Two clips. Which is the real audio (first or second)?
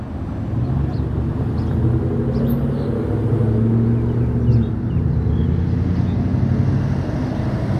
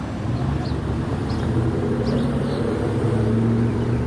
first